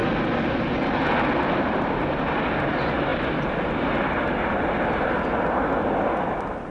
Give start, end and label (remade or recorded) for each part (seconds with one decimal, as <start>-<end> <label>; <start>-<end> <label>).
0.0-6.7 recorded